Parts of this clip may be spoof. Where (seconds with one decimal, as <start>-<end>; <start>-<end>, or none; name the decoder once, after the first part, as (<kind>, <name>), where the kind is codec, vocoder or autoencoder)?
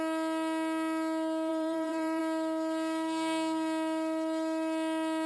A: 1.5-2.2 (vocoder, BigVGAN v2)